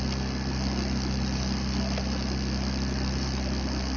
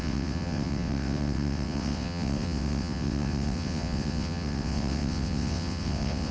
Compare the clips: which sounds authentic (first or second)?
first